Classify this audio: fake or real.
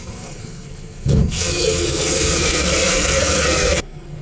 fake